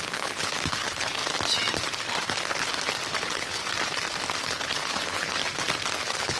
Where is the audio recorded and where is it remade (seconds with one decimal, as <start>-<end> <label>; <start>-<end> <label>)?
0.0-1.2 remade; 1.2-3.1 recorded; 3.1-3.6 remade; 3.6-4.4 recorded; 4.4-5.4 remade; 5.4-6.0 recorded; 6.0-6.4 remade